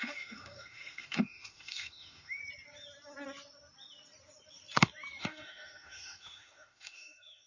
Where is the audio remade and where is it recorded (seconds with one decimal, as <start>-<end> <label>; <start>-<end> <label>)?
0.0-2.4 remade; 2.4-5.2 recorded; 5.2-7.5 remade